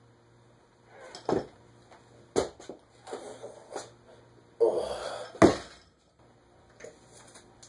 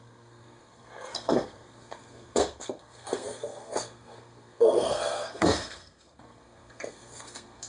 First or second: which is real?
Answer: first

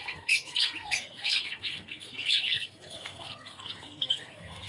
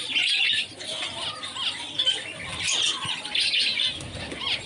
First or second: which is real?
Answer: second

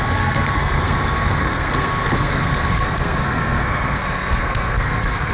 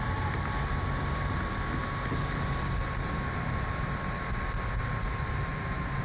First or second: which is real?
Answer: second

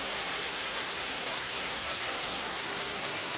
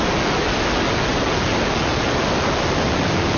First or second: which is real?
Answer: second